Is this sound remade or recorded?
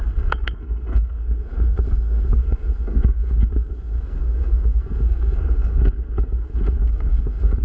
remade